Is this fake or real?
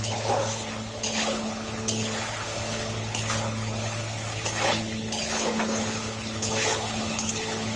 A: fake